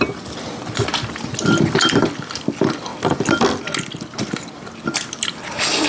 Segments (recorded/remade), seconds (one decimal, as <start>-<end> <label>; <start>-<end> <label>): 0.0-5.9 recorded